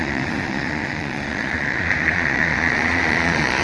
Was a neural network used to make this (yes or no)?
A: yes